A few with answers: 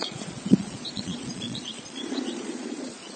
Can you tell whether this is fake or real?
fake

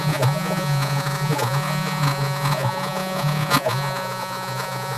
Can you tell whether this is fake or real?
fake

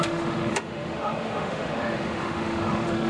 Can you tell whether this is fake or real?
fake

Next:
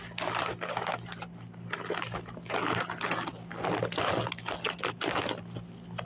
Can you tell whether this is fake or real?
real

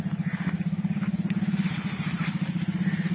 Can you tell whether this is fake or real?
real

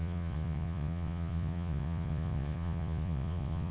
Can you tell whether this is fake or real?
fake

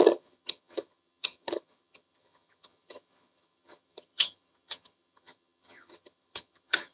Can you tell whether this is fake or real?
fake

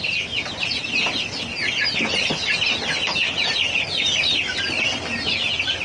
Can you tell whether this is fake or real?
real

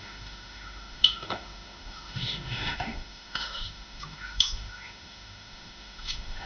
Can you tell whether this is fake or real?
fake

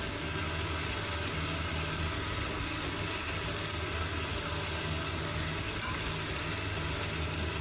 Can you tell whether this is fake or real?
real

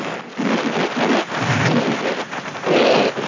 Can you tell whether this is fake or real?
real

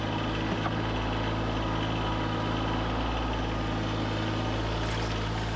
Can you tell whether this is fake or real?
real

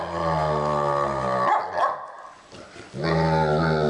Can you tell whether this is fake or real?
real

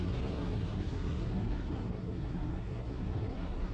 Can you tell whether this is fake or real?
fake